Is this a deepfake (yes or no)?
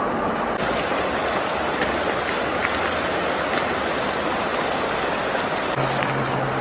no